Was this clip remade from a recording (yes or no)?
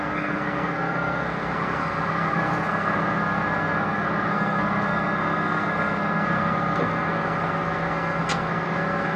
yes